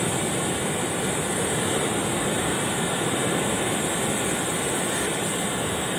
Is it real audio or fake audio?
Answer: real